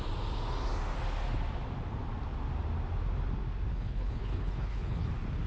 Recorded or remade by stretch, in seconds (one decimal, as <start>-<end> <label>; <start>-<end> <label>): 0.0-3.7 recorded; 3.7-5.1 remade; 5.1-5.5 recorded